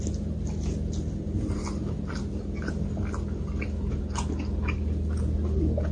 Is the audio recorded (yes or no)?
yes